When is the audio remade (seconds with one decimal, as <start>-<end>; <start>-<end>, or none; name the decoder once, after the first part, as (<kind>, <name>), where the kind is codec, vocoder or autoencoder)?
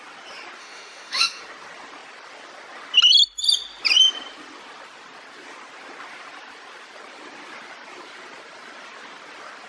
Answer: 0.6-1.4 (autoencoder, DAC-VAE)